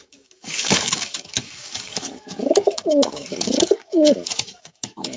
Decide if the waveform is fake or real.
fake